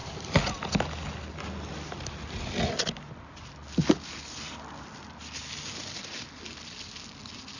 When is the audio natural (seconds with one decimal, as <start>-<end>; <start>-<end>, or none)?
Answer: 0.0-7.6